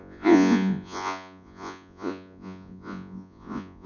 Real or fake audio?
fake